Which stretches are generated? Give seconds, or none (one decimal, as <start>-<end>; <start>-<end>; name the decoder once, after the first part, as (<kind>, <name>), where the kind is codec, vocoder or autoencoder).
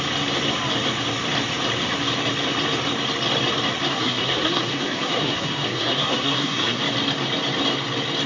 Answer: 3.9-6.8 (codec, SNAC)